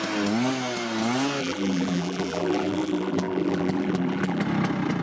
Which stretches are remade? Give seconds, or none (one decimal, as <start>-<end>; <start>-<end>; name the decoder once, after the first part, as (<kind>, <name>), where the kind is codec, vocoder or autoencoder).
1.4-4.4 (vocoder, BigVGAN v2)

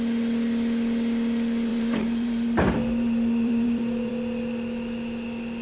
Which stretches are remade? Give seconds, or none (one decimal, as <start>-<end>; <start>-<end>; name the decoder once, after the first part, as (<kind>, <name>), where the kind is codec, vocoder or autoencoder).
1.7-4.1 (vocoder, BigVGAN v2)

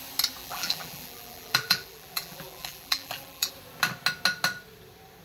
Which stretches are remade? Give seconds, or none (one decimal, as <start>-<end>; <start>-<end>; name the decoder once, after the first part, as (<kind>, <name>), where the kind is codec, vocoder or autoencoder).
0.4-3.5 (vocoder, BigVGAN v2)

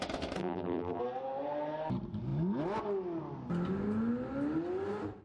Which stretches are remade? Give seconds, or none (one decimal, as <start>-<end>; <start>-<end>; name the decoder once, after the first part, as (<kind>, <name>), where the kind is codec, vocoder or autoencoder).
0.4-1.0 (vocoder, BigVGAN v2)

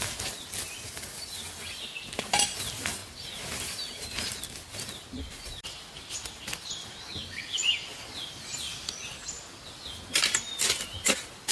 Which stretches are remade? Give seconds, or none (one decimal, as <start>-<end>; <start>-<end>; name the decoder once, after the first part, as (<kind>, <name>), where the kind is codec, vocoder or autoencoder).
none

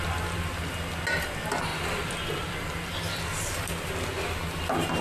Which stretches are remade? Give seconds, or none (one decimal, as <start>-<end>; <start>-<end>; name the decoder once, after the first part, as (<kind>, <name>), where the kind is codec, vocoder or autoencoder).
1.7-3.2 (vocoder, BigVGAN v2)